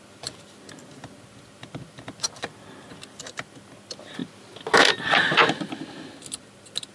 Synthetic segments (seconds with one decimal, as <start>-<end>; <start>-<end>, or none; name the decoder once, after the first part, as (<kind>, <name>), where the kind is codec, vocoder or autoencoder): none

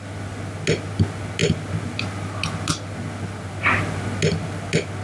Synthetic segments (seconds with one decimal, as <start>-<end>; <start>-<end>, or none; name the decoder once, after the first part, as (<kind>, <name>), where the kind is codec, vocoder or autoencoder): none